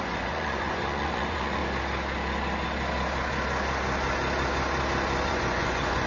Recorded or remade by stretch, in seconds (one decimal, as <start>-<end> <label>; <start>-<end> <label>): 0.0-1.6 remade; 1.6-5.3 recorded; 5.3-6.1 remade